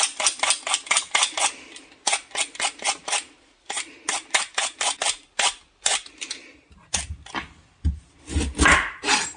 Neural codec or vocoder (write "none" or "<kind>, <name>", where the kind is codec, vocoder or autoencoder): none